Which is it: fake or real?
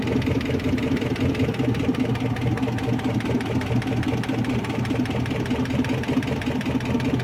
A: real